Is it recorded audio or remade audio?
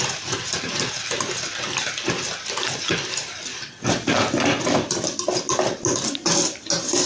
recorded